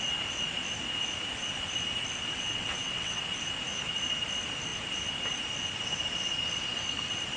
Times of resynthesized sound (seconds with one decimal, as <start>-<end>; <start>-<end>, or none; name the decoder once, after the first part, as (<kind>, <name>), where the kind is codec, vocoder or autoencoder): 2.3-3.2 (vocoder, WaveNeXt)